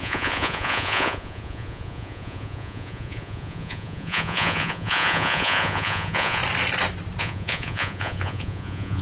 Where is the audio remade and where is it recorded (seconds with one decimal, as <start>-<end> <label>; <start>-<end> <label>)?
0.0-6.4 remade; 6.4-7.2 recorded; 7.2-9.0 remade